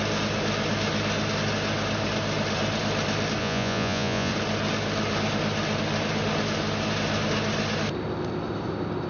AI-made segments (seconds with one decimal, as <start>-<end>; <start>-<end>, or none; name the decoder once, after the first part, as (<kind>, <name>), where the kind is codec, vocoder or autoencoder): 3.4-4.3 (vocoder, Vocos)

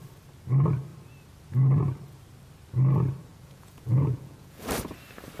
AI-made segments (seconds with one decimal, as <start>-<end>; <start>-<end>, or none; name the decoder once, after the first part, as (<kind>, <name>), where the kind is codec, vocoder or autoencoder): 3.3-4.7 (vocoder, Vocos)